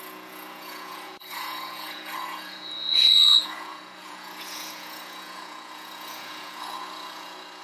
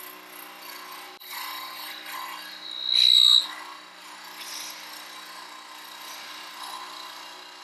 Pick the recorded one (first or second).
second